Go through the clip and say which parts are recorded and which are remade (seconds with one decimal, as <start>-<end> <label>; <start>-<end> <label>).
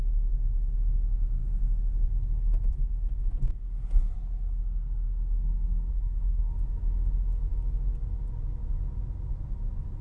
0.0-5.9 recorded; 5.9-6.5 remade; 6.5-10.0 recorded